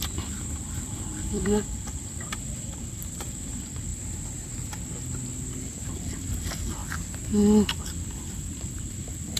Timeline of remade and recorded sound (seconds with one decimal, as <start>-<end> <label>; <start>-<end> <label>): 0.0-3.9 remade; 3.9-5.9 recorded; 5.9-6.8 remade; 6.8-7.7 recorded; 7.7-9.4 remade